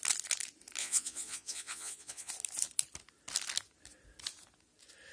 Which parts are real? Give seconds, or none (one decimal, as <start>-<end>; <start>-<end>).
0.0-0.8; 2.3-5.1